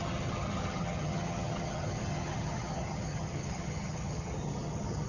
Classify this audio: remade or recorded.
remade